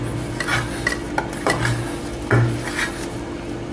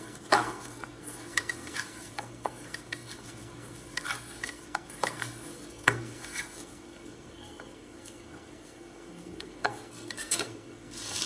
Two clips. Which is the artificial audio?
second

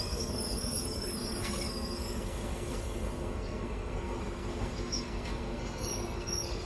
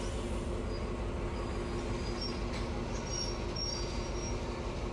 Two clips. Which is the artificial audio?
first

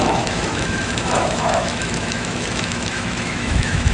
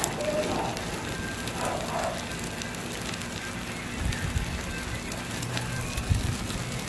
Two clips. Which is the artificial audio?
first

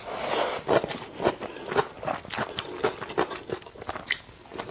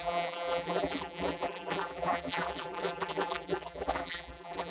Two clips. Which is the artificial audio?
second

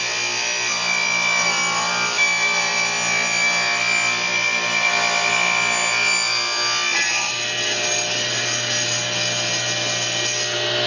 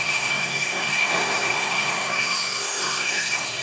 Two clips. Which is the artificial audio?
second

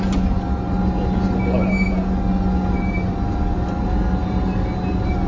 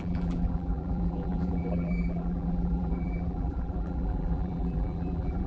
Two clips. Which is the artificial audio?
second